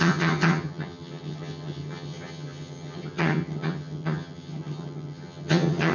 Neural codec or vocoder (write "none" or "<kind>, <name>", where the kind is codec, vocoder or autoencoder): vocoder, HiFi-GAN